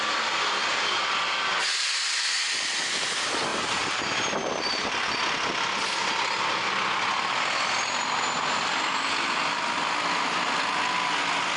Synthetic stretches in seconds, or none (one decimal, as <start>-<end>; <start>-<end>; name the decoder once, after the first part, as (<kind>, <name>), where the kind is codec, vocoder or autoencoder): 3.5-5.2 (vocoder, BigVGAN v2)